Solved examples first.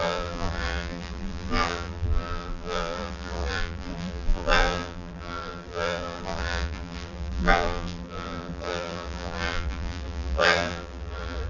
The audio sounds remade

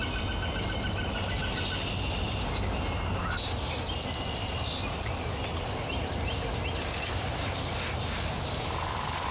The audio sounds recorded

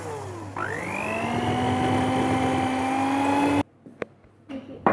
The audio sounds recorded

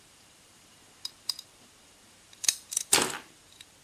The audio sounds remade